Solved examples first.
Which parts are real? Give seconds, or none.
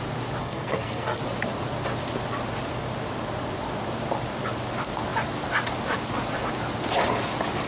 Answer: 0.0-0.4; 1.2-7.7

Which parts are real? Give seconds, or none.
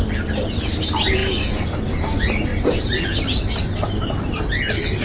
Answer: 0.0-2.5; 3.6-5.0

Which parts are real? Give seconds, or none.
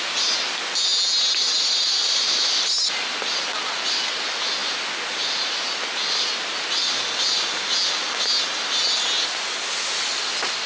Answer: 0.0-10.7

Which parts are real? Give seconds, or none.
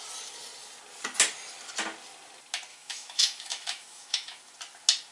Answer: 0.0-2.7; 4.4-5.1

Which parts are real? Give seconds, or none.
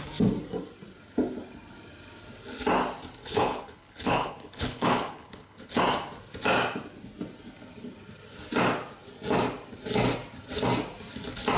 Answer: 0.0-3.2; 5.8-11.6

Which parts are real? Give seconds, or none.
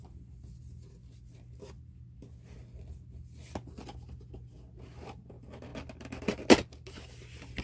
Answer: 0.0-7.6